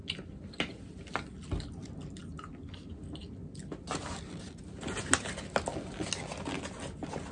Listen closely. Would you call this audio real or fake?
real